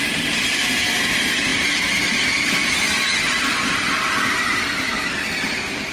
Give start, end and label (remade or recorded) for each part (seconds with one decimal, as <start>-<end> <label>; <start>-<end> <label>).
0.0-5.9 recorded

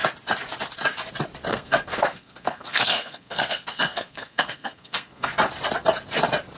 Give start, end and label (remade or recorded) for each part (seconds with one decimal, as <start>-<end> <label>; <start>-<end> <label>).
0.0-1.5 recorded; 1.5-5.3 remade; 5.3-6.6 recorded

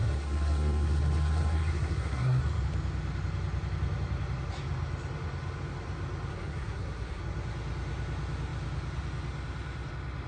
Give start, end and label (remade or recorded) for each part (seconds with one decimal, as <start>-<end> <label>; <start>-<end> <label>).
0.0-2.4 remade; 2.4-6.3 recorded; 6.3-7.2 remade; 7.2-10.3 recorded

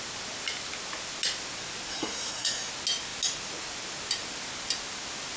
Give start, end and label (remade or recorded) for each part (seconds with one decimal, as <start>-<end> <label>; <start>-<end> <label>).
0.0-1.9 recorded; 1.9-2.7 remade; 2.7-5.4 recorded